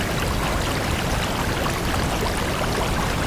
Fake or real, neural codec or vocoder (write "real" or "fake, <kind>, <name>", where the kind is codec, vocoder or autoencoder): real